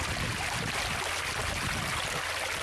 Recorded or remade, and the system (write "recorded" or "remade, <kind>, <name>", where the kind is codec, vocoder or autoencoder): recorded